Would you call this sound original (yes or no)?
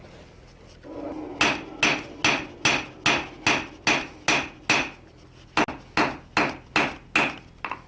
yes